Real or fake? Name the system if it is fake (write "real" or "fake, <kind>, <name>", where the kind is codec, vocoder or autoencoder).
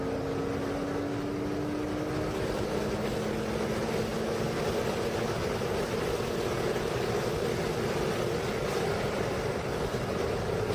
real